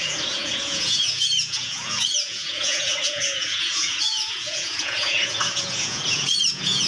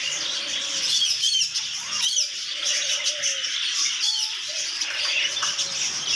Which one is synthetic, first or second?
first